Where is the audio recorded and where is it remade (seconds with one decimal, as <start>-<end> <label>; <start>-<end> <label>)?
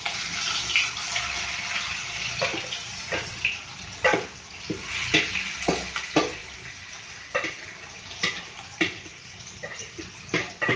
0.0-10.8 recorded